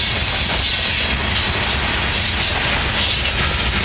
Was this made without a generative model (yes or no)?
yes